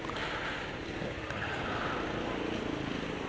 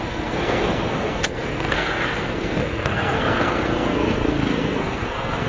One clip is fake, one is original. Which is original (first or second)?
first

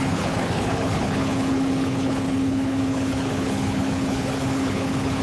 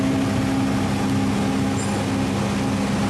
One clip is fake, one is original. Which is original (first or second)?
second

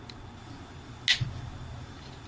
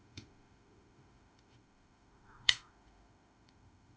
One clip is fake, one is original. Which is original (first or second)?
first